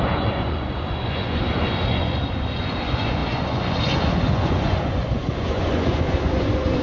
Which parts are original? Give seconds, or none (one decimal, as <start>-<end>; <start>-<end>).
none